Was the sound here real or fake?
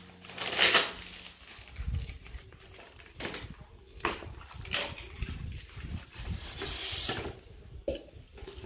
real